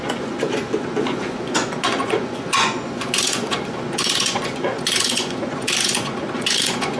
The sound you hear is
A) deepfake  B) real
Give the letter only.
A